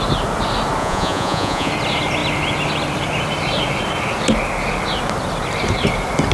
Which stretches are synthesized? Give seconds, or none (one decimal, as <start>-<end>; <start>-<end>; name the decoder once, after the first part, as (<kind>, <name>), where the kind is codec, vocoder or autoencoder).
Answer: 0.8-1.7 (vocoder, Vocos)